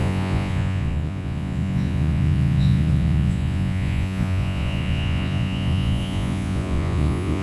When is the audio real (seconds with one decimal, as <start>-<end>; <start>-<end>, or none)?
none